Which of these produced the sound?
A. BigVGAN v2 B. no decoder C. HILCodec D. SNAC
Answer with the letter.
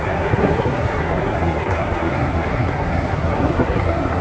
D